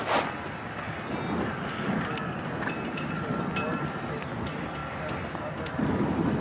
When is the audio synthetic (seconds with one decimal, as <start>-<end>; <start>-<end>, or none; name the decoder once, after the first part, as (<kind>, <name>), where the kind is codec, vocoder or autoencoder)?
none